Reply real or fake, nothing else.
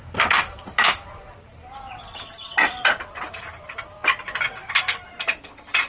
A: real